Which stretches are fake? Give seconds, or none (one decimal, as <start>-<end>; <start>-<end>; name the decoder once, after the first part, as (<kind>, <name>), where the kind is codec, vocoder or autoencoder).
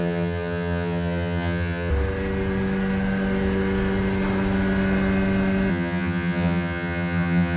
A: 0.0-1.9 (vocoder, HiFi-GAN); 5.7-7.6